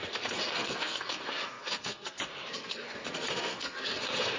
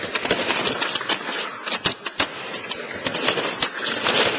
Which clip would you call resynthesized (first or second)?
first